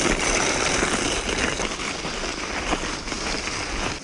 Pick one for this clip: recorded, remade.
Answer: recorded